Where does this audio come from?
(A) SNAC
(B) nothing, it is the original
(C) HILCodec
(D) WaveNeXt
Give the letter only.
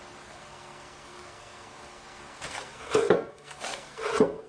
A